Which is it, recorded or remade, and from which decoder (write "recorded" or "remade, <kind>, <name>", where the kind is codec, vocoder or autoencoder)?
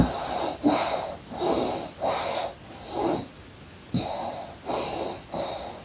recorded